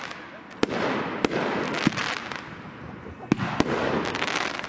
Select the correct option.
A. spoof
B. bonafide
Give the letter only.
B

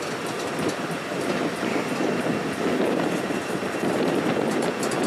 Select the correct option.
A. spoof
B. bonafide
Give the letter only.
B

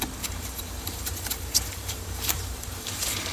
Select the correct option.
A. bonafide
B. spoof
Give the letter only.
B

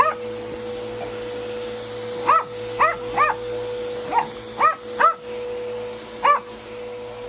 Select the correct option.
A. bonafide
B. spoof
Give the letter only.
A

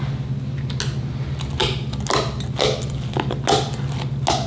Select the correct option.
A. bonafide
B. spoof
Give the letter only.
A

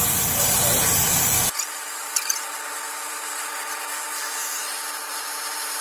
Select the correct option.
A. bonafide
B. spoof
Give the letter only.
B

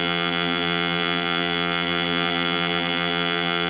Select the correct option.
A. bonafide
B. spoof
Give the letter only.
B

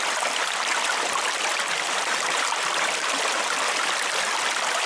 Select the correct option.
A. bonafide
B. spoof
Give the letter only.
B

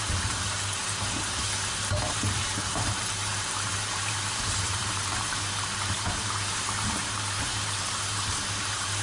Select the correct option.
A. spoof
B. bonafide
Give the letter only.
A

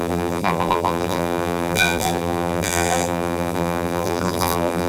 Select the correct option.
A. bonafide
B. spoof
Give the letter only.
B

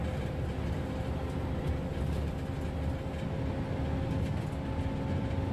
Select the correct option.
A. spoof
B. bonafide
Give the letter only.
B